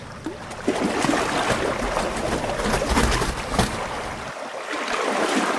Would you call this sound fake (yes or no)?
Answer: no